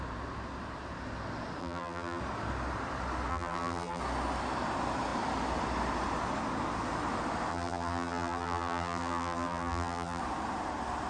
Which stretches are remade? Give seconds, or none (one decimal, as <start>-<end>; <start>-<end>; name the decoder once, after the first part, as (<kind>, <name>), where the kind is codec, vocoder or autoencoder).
1.6-2.2 (vocoder, BigVGAN v2); 3.3-4.0; 7.5-10.2